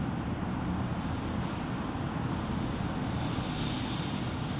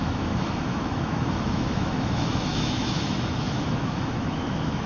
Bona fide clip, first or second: first